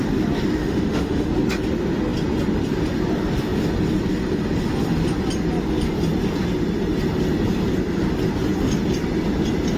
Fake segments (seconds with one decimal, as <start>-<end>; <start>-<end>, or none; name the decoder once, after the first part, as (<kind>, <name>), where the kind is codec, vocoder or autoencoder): 0.6-1.3 (autoencoder, DAC-VAE)